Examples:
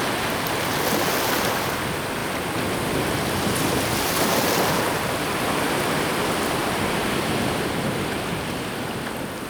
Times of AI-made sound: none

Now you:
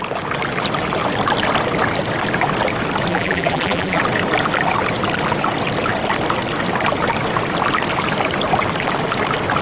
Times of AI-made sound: 3.1-4.0 (vocoder, BigVGAN v2)

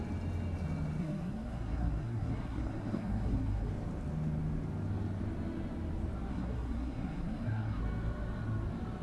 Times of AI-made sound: 1.0-3.7 (codec, SNAC); 6.3-7.8